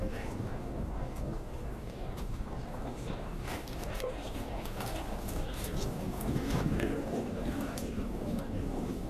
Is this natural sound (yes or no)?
no